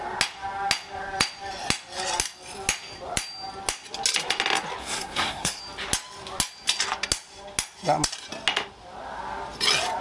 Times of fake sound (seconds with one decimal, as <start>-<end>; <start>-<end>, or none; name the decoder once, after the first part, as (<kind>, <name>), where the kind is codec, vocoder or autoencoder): 4.8-5.6 (codec, SNAC)